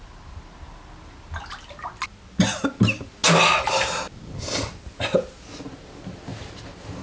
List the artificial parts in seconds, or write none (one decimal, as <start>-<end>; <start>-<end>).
none